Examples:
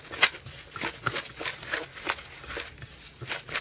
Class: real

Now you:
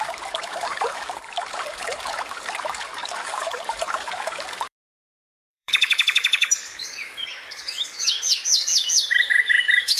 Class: fake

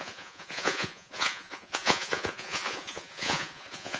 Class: fake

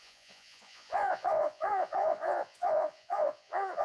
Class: fake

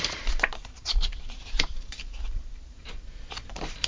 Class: fake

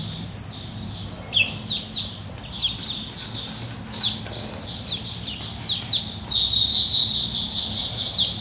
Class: real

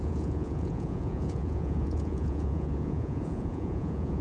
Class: fake